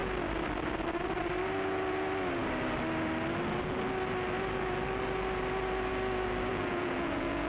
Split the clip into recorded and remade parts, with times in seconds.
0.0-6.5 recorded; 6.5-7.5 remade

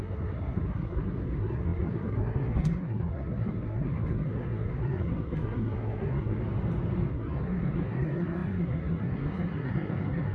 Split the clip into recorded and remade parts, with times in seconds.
0.0-6.4 remade; 6.4-7.1 recorded; 7.1-10.3 remade

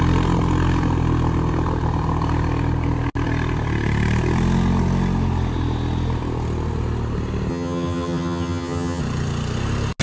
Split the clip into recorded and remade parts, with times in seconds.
0.0-7.5 recorded; 7.5-9.0 remade; 9.0-10.0 recorded

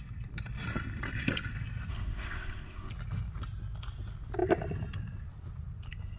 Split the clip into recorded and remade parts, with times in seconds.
0.0-1.9 recorded; 1.9-2.9 remade; 2.9-6.2 recorded

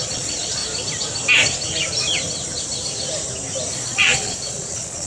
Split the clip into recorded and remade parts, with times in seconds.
0.0-0.6 remade; 0.6-3.7 recorded; 3.7-5.1 remade

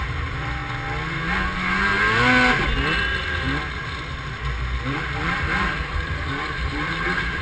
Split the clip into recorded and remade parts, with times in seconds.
0.0-0.6 remade; 0.6-4.8 recorded; 4.8-7.4 remade